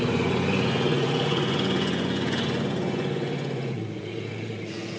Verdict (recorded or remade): remade